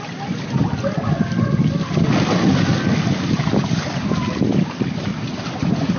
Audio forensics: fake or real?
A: real